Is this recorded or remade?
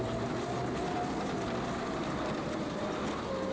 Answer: recorded